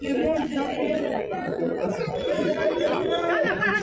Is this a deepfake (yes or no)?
yes